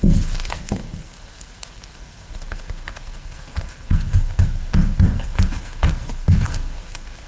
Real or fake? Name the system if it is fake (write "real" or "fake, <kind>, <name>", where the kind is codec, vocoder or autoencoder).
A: fake, codec, SNAC